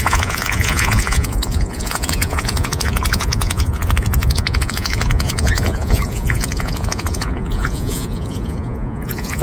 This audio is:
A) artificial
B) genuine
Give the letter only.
A